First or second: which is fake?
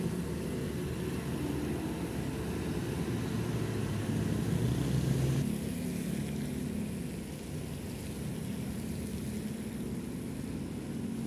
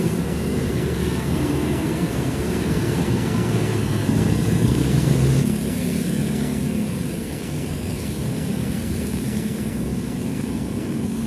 second